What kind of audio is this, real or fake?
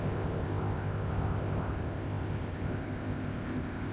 fake